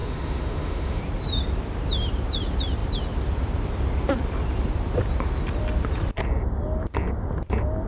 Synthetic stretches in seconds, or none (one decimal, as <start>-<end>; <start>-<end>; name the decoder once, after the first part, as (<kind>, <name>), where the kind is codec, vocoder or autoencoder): 0.0-1.0 (autoencoder, DAC-VAE)